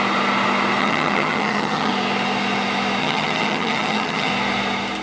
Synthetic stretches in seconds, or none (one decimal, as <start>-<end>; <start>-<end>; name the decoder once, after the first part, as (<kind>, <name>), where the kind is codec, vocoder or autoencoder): 0.8-1.9 (vocoder, HiFi-GAN); 3.0-4.3